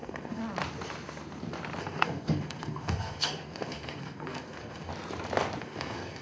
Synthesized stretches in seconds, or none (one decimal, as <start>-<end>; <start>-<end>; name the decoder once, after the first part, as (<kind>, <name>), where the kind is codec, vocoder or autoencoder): 0.0-0.4 (codec, SNAC); 1.8-4.9; 5.6-6.2